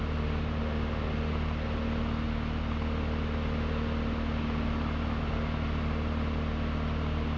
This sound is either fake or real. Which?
real